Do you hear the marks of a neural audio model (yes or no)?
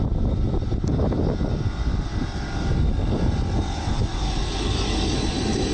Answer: no